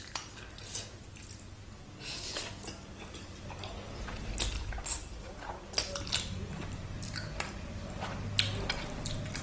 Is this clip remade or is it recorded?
recorded